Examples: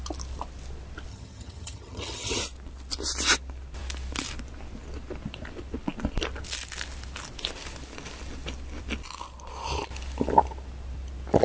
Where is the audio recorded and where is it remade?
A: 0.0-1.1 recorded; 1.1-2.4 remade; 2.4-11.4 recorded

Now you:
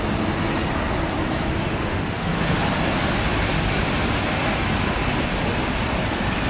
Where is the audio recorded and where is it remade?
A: 0.0-1.7 recorded; 1.7-2.6 remade; 2.6-6.5 recorded